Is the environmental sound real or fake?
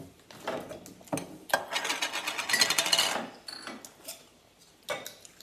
real